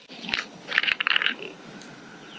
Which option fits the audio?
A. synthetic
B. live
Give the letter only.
B